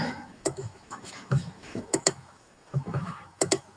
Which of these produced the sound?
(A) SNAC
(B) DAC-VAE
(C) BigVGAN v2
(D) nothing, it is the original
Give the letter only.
B